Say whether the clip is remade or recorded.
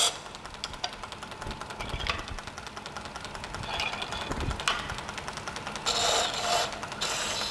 recorded